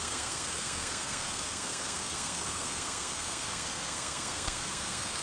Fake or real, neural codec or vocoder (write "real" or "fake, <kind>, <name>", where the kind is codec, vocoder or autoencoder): fake, codec, SNAC